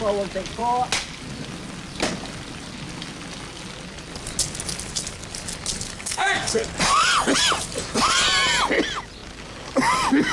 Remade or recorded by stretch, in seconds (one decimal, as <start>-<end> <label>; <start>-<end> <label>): 0.0-5.9 recorded; 5.9-6.7 remade; 6.7-10.3 recorded